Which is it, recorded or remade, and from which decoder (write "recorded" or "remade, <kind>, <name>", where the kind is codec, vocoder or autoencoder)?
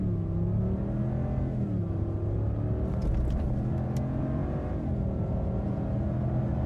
recorded